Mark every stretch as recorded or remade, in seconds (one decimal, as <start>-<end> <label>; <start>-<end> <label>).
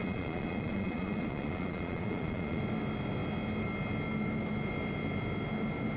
0.0-2.6 remade; 2.6-6.0 recorded